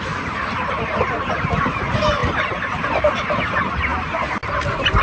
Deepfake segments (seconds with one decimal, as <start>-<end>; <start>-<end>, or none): 0.0-3.9; 4.5-5.0